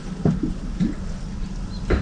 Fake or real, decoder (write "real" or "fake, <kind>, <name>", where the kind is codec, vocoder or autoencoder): real